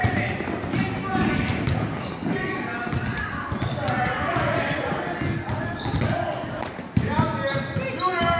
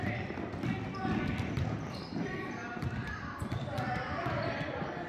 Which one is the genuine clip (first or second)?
first